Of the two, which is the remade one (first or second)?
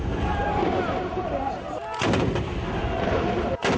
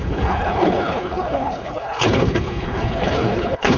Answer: second